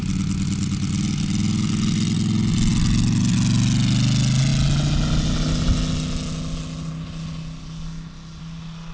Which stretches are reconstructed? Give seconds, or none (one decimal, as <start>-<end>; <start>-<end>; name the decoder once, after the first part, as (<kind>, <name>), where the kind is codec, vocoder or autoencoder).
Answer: none